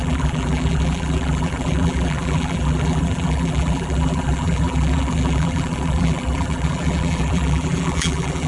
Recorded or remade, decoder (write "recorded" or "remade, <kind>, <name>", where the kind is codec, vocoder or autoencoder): remade, vocoder, BigVGAN v2